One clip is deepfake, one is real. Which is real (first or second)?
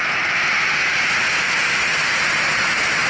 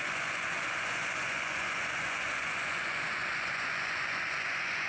first